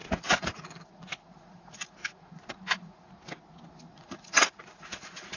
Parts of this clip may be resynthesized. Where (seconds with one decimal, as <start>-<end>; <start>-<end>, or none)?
0.0-3.1; 3.9-5.4